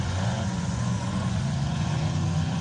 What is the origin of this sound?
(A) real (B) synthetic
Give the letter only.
B